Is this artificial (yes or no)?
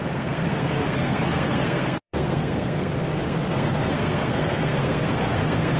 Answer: yes